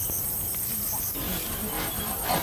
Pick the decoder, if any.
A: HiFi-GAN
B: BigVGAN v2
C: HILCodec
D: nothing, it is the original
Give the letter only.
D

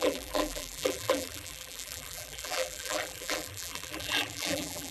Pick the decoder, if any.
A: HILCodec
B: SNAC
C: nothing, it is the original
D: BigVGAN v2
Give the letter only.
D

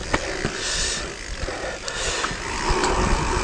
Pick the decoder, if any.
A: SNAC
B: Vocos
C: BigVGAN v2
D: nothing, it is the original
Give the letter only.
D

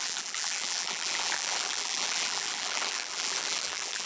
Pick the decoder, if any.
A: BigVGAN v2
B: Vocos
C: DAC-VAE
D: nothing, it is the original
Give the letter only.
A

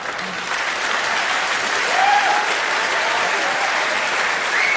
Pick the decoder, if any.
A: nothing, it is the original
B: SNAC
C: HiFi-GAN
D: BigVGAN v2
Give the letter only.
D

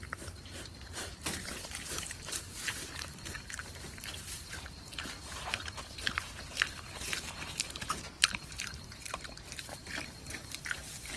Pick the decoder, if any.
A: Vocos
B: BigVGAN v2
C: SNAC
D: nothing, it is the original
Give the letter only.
B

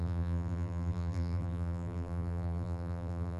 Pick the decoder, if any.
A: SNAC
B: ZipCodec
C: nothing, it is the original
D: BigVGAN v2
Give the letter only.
D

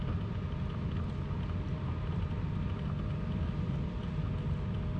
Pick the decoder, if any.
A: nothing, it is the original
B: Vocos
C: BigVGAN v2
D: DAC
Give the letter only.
A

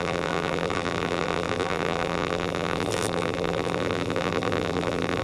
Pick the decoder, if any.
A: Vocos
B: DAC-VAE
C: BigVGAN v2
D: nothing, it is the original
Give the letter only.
C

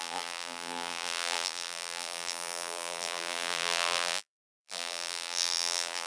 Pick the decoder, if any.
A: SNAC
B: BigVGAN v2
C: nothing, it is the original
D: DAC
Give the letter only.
B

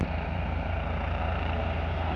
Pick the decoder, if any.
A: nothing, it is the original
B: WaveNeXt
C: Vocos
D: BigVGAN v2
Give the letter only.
D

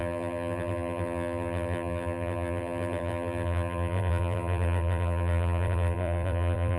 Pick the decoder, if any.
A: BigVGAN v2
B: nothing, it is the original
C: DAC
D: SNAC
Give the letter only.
A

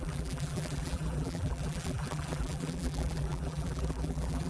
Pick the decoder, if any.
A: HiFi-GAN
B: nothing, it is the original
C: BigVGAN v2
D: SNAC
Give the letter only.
C